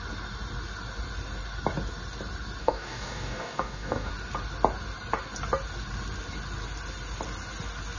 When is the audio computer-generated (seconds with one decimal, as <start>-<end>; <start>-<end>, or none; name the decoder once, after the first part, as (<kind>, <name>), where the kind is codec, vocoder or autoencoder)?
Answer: 2.6-4.1 (codec, DAC)